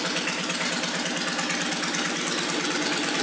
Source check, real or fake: real